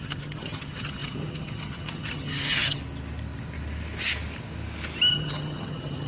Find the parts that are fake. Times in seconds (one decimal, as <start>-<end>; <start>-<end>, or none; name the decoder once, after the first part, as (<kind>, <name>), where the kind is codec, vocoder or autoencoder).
0.0-2.8 (vocoder, HiFi-GAN); 5.1-6.1

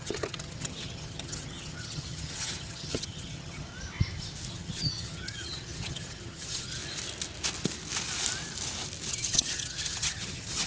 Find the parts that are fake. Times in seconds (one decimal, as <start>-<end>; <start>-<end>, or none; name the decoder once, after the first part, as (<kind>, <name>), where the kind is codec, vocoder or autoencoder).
0.0-3.7 (vocoder, HiFi-GAN); 4.5-6.8; 9.1-10.7

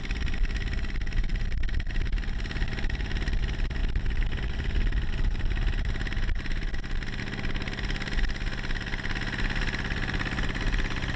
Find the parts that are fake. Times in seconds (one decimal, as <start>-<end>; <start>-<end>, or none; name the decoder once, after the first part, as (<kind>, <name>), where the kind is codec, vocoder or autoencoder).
none

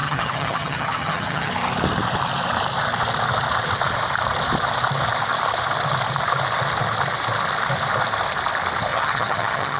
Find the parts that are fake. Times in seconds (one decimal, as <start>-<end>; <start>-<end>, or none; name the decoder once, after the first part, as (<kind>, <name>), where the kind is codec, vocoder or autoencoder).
0.0-1.5 (vocoder, HiFi-GAN); 8.9-9.8

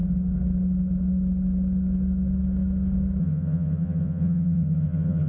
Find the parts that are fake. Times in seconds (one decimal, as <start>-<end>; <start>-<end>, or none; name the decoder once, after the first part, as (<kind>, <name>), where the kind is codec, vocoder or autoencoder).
3.2-5.3 (vocoder, HiFi-GAN)

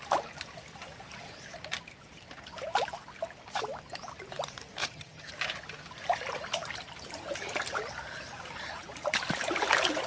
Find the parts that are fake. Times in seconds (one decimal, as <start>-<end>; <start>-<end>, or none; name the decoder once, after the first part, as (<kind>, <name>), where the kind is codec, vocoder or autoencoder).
4.8-5.3 (vocoder, HiFi-GAN)

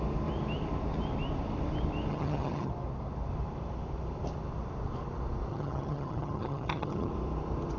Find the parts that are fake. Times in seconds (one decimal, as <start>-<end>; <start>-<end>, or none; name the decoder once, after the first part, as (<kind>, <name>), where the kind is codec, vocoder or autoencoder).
2.1-2.7 (vocoder, HiFi-GAN); 5.5-7.1

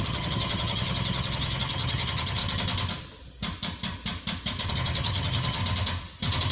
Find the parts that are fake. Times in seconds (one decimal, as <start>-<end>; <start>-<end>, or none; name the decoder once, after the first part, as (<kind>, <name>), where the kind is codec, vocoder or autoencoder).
0.0-2.4 (vocoder, HiFi-GAN); 4.7-5.6